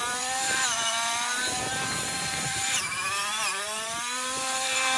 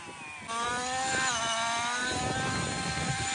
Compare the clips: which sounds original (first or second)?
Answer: second